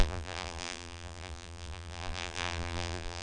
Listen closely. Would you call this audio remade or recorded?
remade